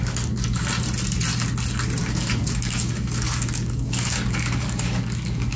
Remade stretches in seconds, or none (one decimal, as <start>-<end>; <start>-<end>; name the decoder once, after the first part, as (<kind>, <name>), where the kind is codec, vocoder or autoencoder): 0.0-0.6 (codec, DAC); 2.0-5.6